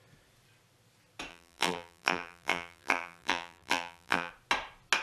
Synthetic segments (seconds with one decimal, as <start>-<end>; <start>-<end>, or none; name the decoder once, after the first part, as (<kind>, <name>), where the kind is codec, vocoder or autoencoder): 1.3-4.3 (vocoder, BigVGAN v2)